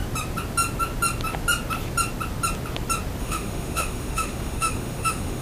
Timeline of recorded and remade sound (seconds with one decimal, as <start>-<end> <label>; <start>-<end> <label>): 0.0-3.2 recorded; 3.2-5.4 remade